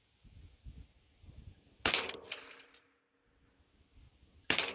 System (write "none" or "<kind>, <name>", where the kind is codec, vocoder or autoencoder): none